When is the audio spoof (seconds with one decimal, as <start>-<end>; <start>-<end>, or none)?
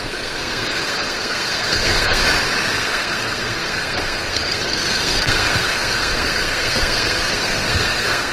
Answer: 0.0-2.2; 2.7-8.3